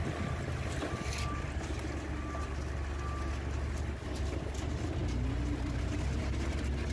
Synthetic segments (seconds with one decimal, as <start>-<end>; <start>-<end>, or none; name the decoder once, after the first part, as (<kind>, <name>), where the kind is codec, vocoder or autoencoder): none